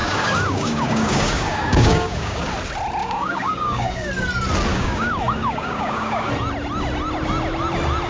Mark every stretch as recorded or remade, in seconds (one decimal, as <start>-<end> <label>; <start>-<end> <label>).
0.0-2.5 remade; 2.5-3.0 recorded; 3.0-4.1 remade; 4.1-4.7 recorded; 4.7-6.3 remade; 6.3-8.1 recorded